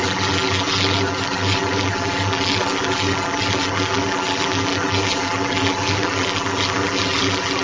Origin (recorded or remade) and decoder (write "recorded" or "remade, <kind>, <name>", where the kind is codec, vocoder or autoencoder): remade, vocoder, BigVGAN v2